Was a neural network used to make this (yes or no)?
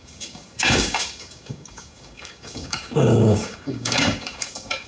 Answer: yes